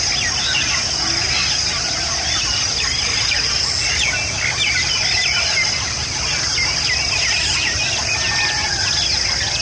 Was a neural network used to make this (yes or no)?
no